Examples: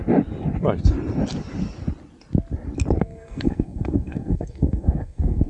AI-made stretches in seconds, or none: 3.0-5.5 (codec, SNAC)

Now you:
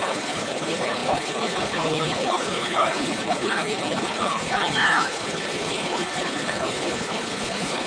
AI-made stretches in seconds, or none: 0.0-7.9 (codec, HILCodec)